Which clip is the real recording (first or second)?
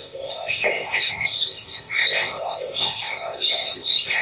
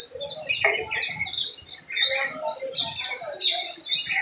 second